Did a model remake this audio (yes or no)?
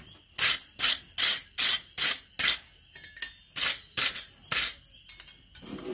no